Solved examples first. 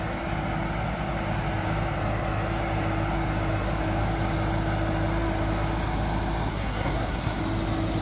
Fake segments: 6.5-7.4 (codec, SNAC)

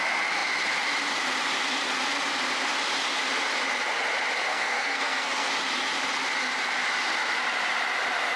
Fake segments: 4.5-5.5 (codec, SNAC)

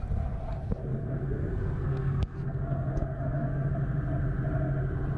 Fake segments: 0.9-3.7 (codec, SNAC)

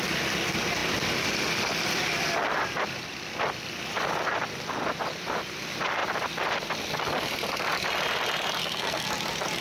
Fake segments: 8.6-9.1 (codec, SNAC)

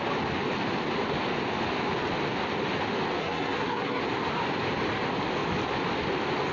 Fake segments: 3.2-4.0 (codec, SNAC)